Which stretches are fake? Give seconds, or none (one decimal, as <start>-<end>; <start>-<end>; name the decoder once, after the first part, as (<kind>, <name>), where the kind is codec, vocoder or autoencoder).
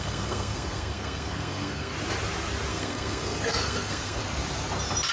0.0-1.9 (codec, SNAC); 2.7-4.2